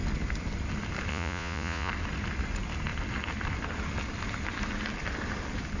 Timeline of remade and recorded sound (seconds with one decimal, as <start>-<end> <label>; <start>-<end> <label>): 0.0-1.1 recorded; 1.1-1.9 remade; 1.9-5.8 recorded